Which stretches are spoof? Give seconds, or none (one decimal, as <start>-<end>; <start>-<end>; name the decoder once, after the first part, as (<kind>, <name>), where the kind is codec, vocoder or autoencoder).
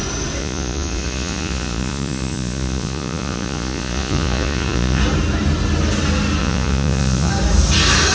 0.4-5.0 (vocoder, Vocos); 6.4-7.3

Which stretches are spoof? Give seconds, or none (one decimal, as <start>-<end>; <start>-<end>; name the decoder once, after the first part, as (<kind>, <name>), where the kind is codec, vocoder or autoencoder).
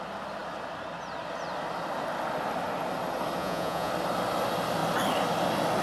3.4-3.9 (vocoder, Vocos)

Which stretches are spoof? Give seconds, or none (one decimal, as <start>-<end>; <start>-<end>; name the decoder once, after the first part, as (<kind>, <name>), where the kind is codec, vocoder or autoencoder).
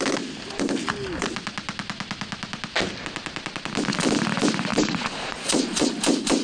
4.7-5.9 (vocoder, Vocos)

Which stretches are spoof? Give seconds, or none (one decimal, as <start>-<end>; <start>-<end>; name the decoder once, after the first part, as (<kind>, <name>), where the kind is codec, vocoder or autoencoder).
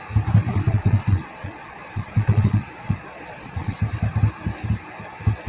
0.5-3.8 (vocoder, Vocos)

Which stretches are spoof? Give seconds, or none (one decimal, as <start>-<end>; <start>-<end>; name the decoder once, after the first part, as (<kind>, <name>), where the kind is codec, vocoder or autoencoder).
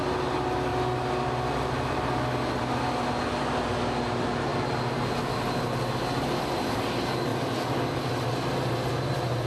none